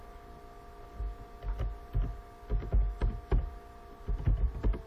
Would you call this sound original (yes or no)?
yes